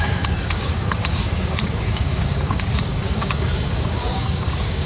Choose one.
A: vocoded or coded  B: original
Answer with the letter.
A